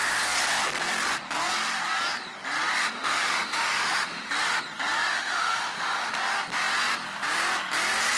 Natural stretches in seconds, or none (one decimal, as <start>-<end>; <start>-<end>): 0.0-2.8; 4.3-5.1; 6.1-8.2